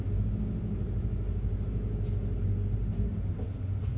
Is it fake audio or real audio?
real